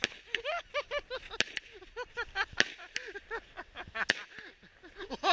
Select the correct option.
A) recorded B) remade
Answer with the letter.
A